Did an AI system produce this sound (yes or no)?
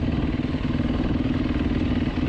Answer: no